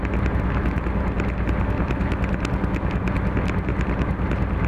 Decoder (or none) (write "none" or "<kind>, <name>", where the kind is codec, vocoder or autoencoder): none